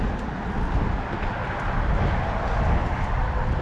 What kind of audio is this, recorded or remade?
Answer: recorded